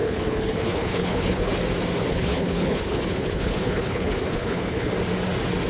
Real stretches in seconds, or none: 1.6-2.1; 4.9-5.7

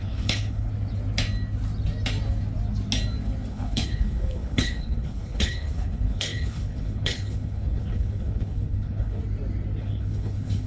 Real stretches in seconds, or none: 0.7-3.5; 9.2-9.8

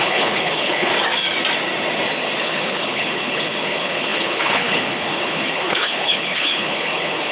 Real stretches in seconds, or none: 0.9-2.4